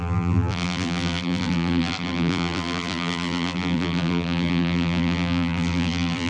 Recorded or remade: remade